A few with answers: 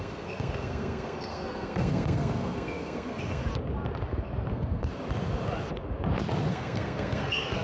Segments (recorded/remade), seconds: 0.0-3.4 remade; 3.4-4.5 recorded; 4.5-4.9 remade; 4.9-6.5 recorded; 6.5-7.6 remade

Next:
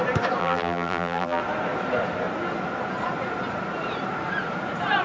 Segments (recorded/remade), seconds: 0.0-0.4 recorded; 0.4-1.4 remade; 1.4-5.0 recorded

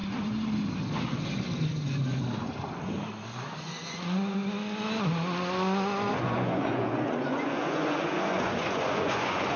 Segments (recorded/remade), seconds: 0.0-3.6 recorded; 3.6-4.4 remade; 4.4-6.1 recorded; 6.1-9.6 remade

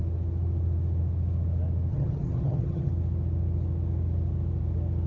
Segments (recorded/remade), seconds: 0.0-1.9 recorded; 1.9-2.9 remade; 2.9-5.1 recorded

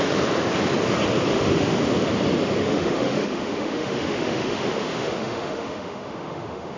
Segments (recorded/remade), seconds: 0.0-1.3 recorded; 1.3-1.8 remade; 1.8-2.6 recorded; 2.6-6.8 remade

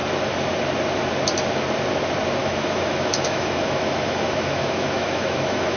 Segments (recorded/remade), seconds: 0.0-2.4 recorded; 2.4-5.8 remade

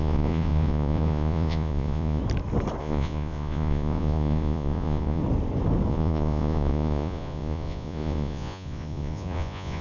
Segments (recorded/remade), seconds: 0.0-2.2 remade; 2.2-2.8 recorded; 2.8-5.2 remade; 5.2-5.9 recorded; 5.9-9.8 remade